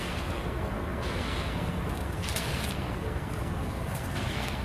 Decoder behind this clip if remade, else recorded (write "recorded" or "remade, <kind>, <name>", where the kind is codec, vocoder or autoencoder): remade, codec, SNAC